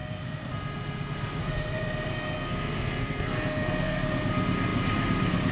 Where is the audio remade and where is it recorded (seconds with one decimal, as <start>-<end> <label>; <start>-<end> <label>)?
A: 0.0-0.5 remade; 0.5-1.4 recorded; 1.4-4.1 remade; 4.1-5.5 recorded